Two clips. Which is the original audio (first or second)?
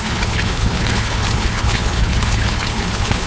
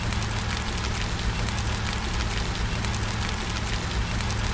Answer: second